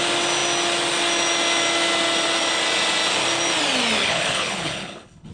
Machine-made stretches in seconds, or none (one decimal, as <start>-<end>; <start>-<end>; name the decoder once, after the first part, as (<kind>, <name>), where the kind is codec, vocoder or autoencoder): 4.0-5.3 (codec, HILCodec)

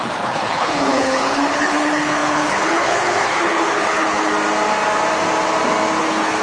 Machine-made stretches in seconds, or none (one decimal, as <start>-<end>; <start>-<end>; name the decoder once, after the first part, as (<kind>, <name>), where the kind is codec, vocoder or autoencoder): 0.0-4.3 (codec, HILCodec); 6.0-6.4